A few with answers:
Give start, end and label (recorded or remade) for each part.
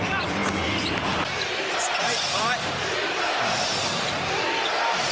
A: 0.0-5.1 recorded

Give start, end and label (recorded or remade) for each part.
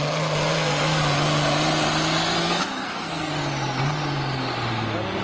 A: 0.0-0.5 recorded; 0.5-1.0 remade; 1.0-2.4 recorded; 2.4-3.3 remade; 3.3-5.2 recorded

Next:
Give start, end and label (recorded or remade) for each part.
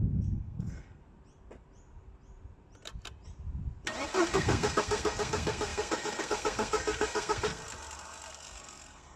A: 0.0-1.0 remade; 1.0-4.3 recorded; 4.3-7.6 remade; 7.6-8.3 recorded; 8.3-9.2 remade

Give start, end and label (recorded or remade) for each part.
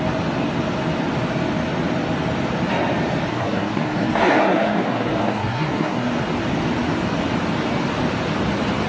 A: 0.0-3.3 recorded; 3.3-6.1 remade; 6.1-8.9 recorded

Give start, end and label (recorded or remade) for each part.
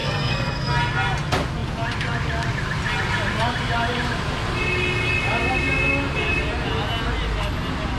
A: 0.0-0.8 remade; 0.8-8.0 recorded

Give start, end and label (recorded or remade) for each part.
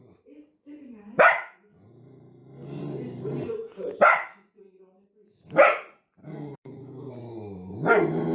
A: 0.0-6.2 recorded; 6.2-7.1 remade; 7.1-8.3 recorded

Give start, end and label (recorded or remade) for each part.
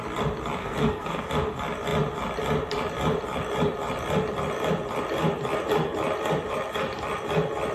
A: 0.0-0.6 recorded; 0.6-1.3 remade; 1.3-7.7 recorded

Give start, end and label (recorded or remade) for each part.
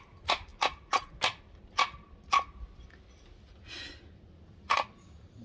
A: 0.0-5.4 recorded